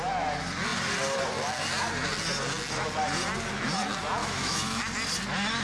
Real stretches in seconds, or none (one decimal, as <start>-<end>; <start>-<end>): 0.0-4.2; 4.8-5.6